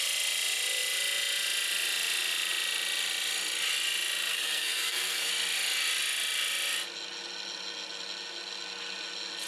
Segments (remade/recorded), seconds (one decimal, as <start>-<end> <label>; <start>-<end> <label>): 0.0-4.3 recorded; 4.3-5.3 remade; 5.3-9.5 recorded